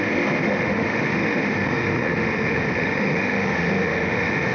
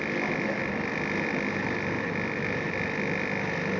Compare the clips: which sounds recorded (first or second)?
second